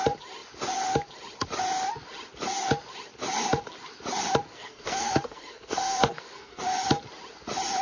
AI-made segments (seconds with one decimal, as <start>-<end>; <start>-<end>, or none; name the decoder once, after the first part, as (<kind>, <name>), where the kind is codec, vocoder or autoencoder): 4.5-6.6 (codec, SNAC)